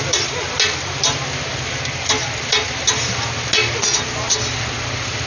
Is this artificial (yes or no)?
no